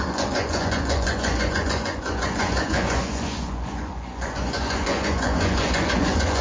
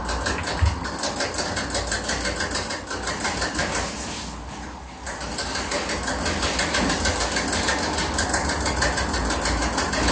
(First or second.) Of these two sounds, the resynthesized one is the first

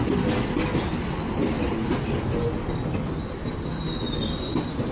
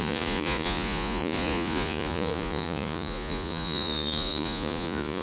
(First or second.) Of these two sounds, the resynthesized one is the second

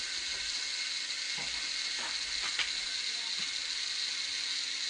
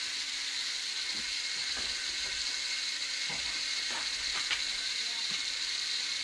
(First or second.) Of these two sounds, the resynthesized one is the second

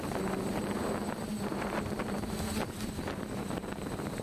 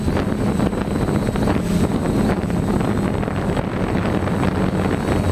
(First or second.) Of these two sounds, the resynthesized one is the first